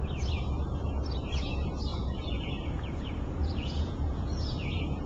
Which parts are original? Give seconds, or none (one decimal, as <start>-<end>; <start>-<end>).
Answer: 0.0-1.9